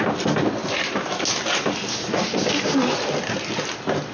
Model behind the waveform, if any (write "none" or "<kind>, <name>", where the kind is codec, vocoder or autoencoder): none